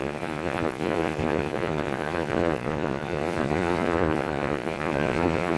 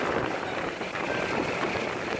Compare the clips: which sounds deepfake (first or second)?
first